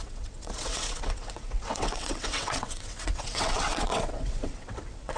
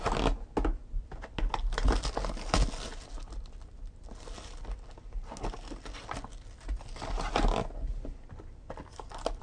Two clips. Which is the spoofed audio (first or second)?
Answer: first